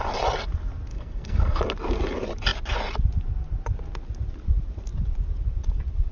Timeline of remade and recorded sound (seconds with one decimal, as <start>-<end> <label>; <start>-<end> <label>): 0.0-0.9 recorded; 0.9-1.6 remade; 1.6-6.1 recorded